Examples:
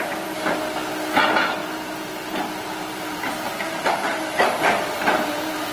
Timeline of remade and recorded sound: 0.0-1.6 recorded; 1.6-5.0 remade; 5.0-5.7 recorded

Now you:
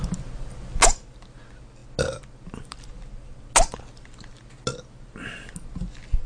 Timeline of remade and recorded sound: 0.0-6.3 recorded

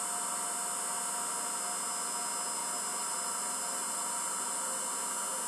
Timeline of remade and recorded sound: 0.0-2.6 recorded; 2.6-4.8 remade; 4.8-5.5 recorded

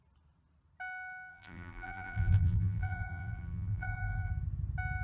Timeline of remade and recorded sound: 0.0-1.3 recorded; 1.3-4.3 remade; 4.3-5.0 recorded

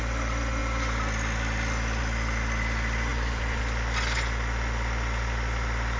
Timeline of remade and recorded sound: 0.0-3.1 recorded; 3.1-3.6 remade; 3.6-6.0 recorded

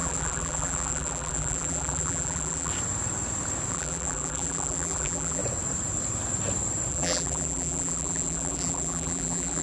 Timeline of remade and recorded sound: 0.0-2.7 remade; 2.7-3.7 recorded; 3.7-5.4 remade; 5.4-6.9 recorded; 6.9-9.6 remade

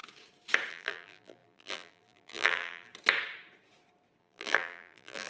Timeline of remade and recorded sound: 0.0-0.7 recorded; 0.7-2.9 remade; 2.9-4.2 recorded; 4.2-5.3 remade